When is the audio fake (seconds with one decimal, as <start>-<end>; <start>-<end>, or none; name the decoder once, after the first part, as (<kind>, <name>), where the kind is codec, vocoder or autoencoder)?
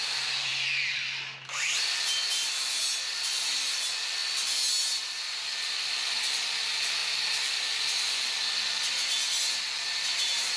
none